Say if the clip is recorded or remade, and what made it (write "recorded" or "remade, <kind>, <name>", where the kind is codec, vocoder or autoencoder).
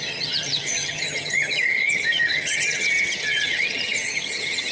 remade, vocoder, HiFi-GAN